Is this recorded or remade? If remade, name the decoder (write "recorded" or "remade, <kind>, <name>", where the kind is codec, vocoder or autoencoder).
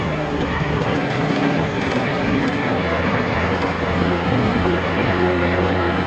remade, codec, SNAC